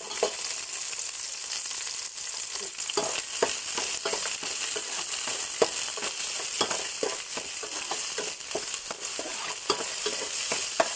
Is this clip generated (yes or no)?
no